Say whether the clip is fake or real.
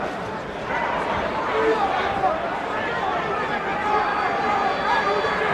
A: fake